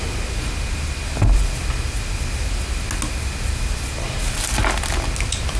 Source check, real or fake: real